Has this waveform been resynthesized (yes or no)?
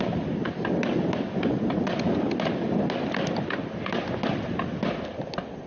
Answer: no